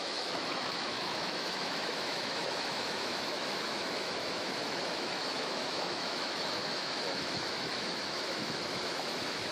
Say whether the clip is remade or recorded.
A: remade